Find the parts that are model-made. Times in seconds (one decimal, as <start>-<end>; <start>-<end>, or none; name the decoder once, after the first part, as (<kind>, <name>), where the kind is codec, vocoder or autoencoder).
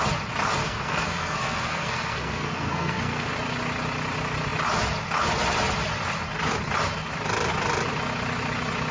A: 0.6-3.3 (codec, SNAC)